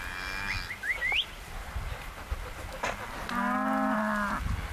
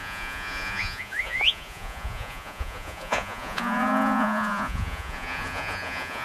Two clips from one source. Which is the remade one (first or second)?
second